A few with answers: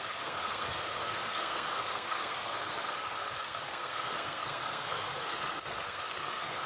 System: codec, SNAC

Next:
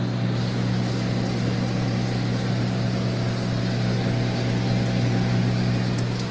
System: none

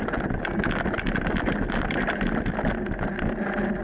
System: none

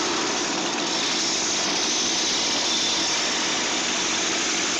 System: none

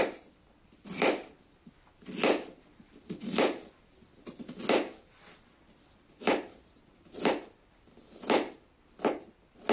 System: none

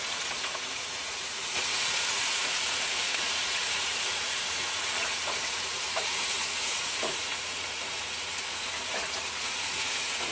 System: vocoder, Vocos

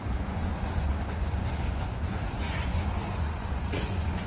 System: vocoder, Vocos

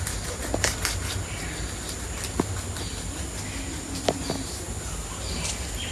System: none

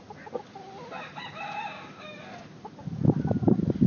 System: none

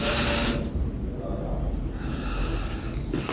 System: none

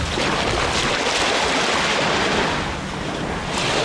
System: none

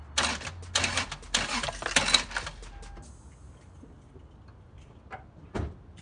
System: none